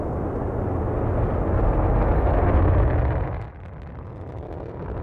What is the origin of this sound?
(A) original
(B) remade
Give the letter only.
A